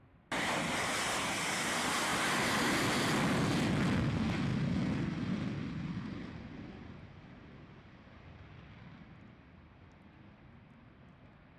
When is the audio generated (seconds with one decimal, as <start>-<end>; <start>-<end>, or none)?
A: none